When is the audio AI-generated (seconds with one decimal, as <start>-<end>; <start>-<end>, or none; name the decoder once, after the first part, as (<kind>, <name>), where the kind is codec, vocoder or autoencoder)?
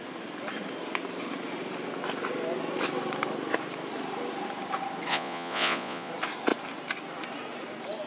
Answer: 5.1-6.1 (vocoder, Vocos)